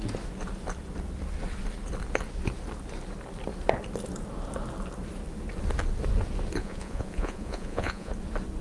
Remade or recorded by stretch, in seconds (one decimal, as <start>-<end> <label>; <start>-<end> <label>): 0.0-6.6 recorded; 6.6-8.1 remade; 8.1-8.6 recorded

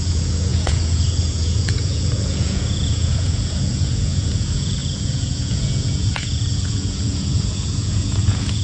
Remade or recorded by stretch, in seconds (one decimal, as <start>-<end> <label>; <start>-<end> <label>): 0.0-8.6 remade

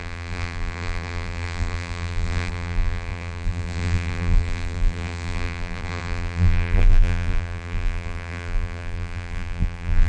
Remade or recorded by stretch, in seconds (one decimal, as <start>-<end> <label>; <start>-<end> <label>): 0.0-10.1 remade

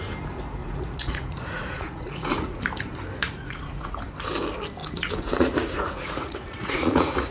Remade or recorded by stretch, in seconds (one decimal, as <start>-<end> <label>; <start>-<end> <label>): 0.0-0.6 recorded; 0.6-2.6 remade; 2.6-3.2 recorded; 3.2-4.1 remade; 4.1-4.8 recorded; 4.8-7.3 remade

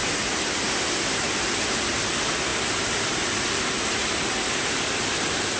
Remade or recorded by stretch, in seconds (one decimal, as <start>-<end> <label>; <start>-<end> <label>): 0.0-5.6 recorded

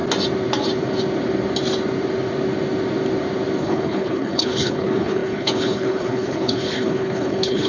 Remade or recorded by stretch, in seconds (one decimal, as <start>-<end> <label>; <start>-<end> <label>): 0.0-3.6 recorded; 3.6-7.7 remade

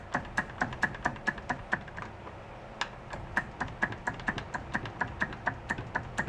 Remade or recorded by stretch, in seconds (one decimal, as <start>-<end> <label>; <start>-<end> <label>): 0.0-1.1 recorded; 1.1-2.4 remade; 2.4-6.3 recorded

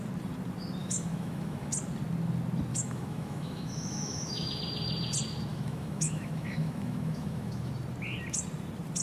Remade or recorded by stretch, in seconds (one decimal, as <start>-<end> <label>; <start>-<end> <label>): 0.0-0.8 recorded; 0.8-1.7 remade; 1.7-2.7 recorded; 2.7-4.6 remade; 4.6-5.5 recorded; 5.5-7.7 remade; 7.7-9.0 recorded